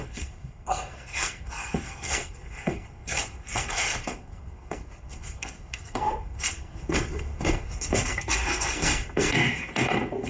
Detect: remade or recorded remade